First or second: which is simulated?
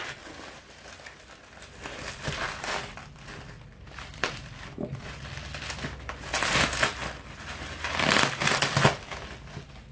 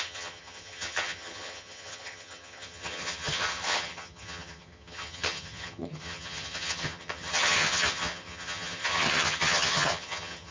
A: second